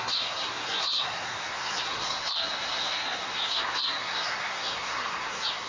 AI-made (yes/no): yes